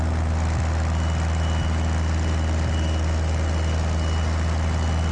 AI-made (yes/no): no